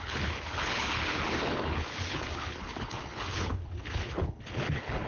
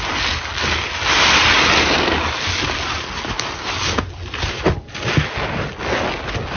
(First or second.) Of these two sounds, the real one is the second